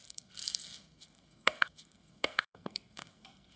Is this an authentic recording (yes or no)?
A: no